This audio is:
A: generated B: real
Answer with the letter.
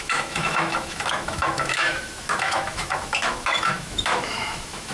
A